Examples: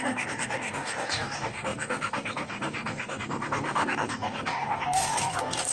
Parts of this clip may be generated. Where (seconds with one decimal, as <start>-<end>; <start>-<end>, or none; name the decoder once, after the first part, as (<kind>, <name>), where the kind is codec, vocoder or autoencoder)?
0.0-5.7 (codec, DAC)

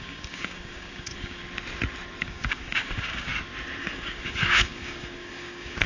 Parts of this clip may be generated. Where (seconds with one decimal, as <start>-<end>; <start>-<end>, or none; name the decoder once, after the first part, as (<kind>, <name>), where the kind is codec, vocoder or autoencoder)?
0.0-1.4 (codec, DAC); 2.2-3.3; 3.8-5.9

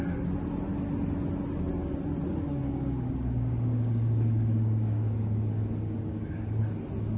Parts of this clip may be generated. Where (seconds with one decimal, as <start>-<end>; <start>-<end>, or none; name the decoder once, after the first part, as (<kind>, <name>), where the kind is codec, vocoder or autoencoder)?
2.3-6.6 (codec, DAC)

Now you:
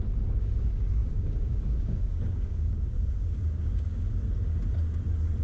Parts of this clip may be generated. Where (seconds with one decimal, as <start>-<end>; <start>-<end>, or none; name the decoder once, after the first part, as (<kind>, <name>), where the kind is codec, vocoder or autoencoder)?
0.0-4.2 (codec, DAC)